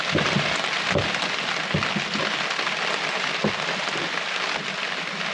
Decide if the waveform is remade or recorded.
recorded